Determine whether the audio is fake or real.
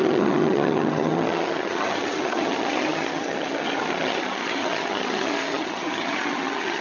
fake